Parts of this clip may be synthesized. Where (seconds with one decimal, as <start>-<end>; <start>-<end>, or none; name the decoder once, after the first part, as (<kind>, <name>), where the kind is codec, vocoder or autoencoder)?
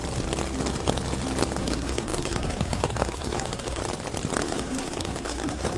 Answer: 1.6-3.8 (codec, SNAC); 4.4-5.8